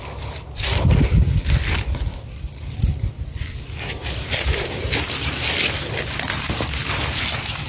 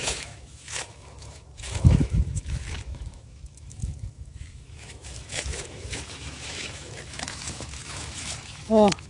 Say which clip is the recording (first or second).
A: first